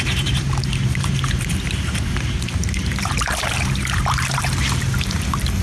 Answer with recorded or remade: remade